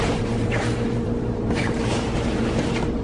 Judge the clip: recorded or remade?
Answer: remade